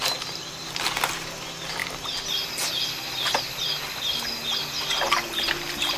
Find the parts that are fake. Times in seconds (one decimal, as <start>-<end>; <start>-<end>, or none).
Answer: none